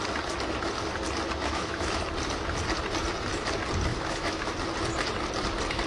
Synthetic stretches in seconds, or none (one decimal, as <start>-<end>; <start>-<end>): 1.4-2.0; 3.9-4.5